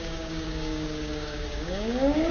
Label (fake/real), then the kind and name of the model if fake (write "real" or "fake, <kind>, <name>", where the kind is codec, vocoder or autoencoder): fake, codec, DAC